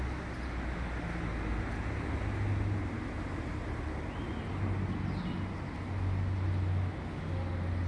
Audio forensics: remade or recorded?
recorded